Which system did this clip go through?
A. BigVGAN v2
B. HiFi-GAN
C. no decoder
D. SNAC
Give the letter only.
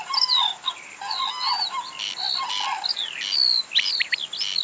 C